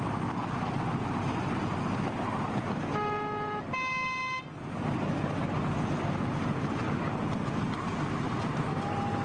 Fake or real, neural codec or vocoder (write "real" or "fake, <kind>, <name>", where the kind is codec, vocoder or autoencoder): real